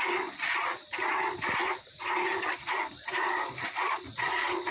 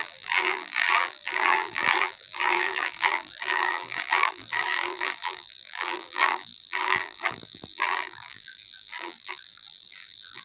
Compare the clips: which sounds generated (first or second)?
second